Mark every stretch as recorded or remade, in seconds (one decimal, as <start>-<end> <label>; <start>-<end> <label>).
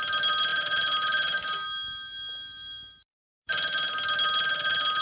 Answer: 0.0-5.0 recorded